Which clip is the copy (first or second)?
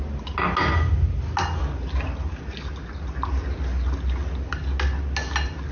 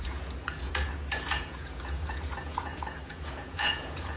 second